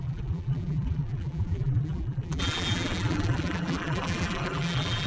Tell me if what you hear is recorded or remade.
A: remade